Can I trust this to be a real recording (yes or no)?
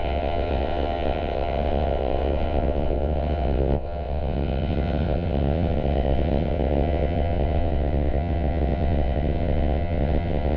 no